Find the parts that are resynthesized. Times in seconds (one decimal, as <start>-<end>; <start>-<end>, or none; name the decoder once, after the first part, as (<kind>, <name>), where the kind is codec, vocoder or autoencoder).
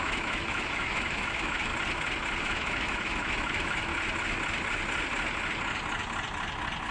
0.0-1.7 (autoencoder, DAC-VAE); 2.4-3.9